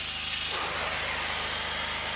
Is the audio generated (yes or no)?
no